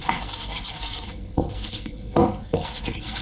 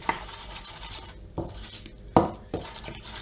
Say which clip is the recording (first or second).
second